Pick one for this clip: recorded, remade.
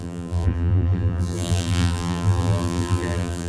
remade